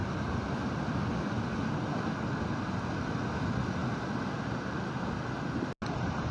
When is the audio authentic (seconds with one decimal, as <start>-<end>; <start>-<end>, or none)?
0.0-6.3